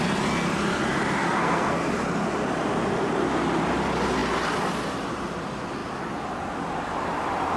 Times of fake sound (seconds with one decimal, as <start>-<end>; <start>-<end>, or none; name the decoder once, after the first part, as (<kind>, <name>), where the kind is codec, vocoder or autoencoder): 1.2-1.9 (codec, SNAC)